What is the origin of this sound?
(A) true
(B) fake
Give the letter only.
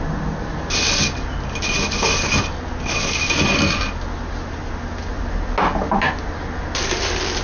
A